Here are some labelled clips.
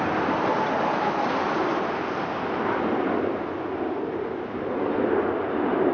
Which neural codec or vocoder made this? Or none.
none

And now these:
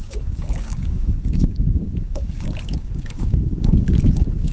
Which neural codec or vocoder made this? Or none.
codec, DAC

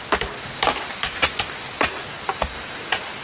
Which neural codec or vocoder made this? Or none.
none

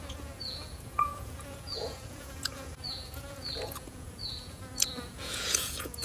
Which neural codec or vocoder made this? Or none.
vocoder, Vocos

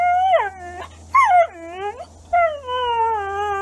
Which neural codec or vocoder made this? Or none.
none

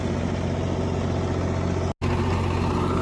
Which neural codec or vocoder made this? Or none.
none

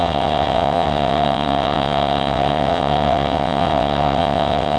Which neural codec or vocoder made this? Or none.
vocoder, WaveNeXt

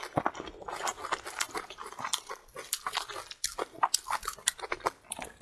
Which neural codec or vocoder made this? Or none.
none